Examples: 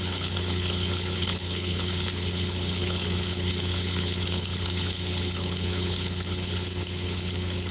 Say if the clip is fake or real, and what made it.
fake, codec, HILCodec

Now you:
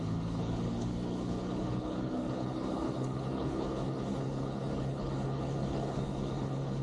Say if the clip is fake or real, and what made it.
fake, codec, HILCodec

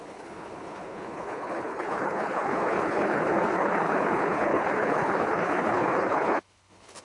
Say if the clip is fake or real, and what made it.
fake, codec, HILCodec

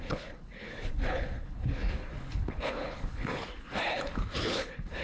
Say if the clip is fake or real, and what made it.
fake, codec, HILCodec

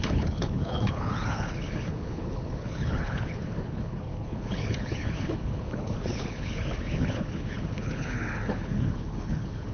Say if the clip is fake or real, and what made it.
fake, codec, HILCodec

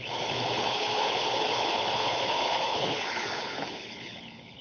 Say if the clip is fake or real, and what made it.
fake, codec, HILCodec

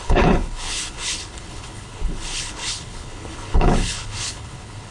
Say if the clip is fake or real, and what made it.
fake, codec, HILCodec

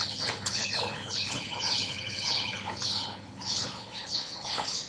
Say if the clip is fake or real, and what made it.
fake, codec, HILCodec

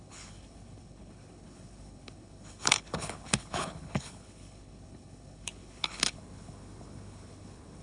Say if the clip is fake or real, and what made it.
fake, codec, HILCodec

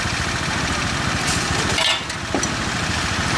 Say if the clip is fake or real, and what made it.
real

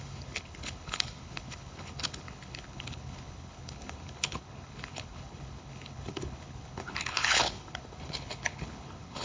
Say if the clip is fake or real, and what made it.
fake, codec, HILCodec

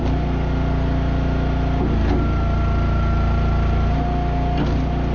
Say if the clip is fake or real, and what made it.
real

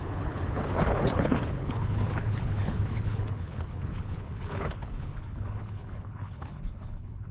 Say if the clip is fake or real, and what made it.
fake, codec, HILCodec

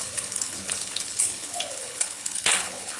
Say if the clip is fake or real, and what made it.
fake, codec, HILCodec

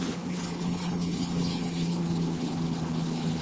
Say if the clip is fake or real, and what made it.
fake, codec, HILCodec